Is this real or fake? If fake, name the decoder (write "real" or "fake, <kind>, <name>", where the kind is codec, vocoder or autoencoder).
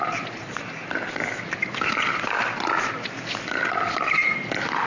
real